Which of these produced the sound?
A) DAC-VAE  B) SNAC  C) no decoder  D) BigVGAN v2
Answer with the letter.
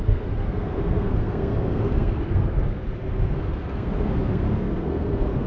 B